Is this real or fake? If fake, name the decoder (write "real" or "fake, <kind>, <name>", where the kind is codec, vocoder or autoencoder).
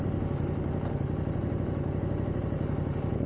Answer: real